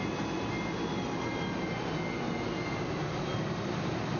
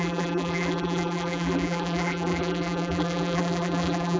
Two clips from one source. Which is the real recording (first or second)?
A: first